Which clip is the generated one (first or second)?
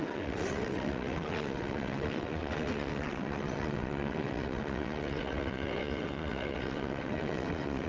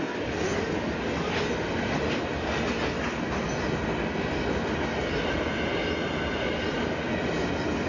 first